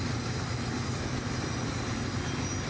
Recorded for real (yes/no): yes